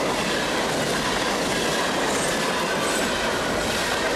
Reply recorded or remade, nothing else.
recorded